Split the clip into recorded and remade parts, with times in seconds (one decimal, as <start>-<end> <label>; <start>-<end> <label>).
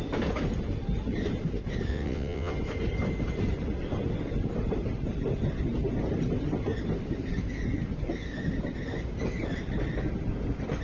0.0-1.9 recorded; 1.9-2.5 remade; 2.5-10.8 recorded